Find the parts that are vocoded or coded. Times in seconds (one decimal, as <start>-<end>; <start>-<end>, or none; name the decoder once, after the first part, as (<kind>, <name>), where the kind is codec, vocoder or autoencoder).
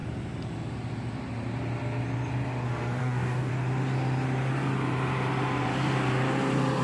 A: 3.0-3.5 (codec, DAC)